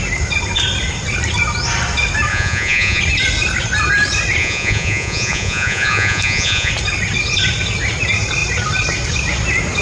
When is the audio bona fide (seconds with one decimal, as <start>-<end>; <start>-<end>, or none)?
0.0-2.3; 3.0-4.4; 6.7-9.8